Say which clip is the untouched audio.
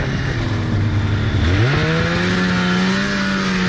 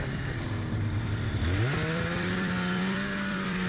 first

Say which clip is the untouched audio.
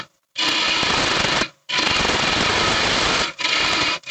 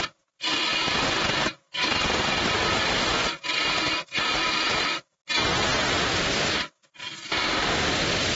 second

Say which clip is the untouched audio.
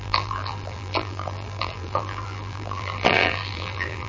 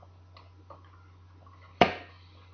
second